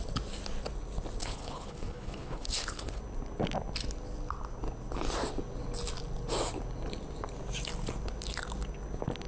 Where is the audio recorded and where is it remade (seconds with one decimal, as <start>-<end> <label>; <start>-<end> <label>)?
0.0-1.2 recorded; 1.2-3.0 remade; 3.0-9.3 recorded